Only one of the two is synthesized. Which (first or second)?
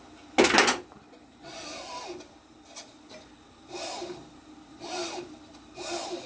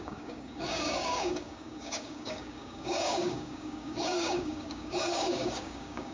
second